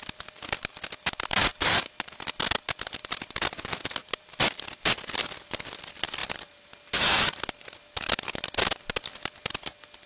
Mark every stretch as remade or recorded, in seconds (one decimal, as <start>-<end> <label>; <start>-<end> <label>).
0.0-10.1 recorded